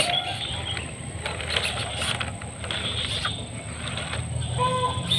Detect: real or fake real